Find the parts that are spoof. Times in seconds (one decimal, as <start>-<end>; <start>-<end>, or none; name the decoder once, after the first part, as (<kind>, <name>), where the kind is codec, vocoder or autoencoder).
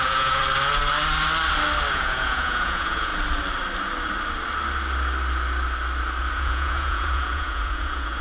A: 0.0-0.4 (vocoder, Vocos); 1.9-3.1; 6.3-8.2